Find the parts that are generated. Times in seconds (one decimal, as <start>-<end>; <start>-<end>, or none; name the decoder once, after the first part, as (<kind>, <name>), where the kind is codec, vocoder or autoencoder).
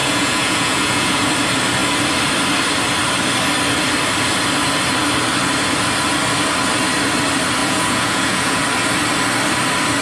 0.0-1.3 (vocoder, Vocos); 7.6-8.6